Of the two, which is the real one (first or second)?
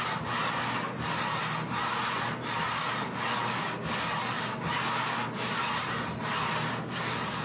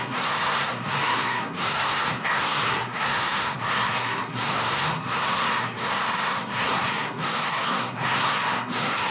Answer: first